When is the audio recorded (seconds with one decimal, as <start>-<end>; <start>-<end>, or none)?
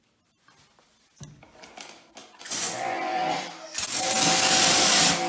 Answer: 0.0-2.2; 3.5-5.3